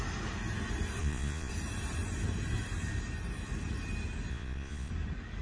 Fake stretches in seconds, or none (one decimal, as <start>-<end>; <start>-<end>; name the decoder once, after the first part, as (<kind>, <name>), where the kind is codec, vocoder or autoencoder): 1.0-1.5 (vocoder, Vocos); 4.3-4.9